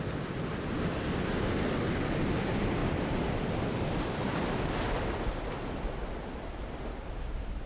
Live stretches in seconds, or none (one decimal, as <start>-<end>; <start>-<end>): 0.0-7.7